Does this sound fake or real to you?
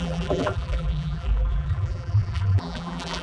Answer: fake